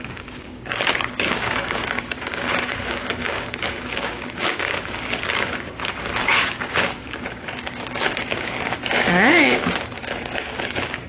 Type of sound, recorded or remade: remade